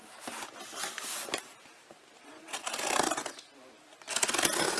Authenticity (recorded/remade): recorded